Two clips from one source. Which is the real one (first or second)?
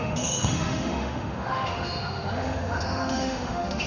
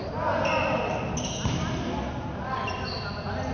second